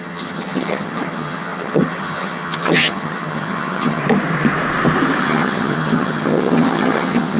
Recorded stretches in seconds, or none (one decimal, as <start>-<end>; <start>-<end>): 4.0-5.2